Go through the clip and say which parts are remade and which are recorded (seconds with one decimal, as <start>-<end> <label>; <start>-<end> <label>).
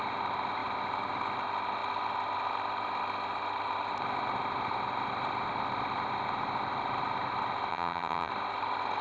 0.0-7.7 recorded; 7.7-8.3 remade; 8.3-9.0 recorded